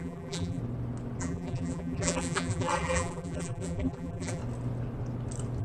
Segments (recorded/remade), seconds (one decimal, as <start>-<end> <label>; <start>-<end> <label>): 0.0-0.6 remade; 0.6-1.2 recorded; 1.2-4.4 remade; 4.4-5.6 recorded